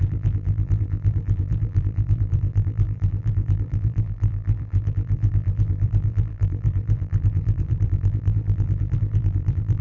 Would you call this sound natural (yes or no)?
no